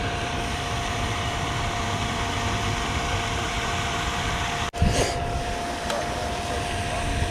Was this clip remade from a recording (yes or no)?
yes